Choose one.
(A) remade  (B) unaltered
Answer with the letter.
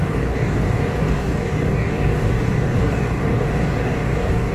A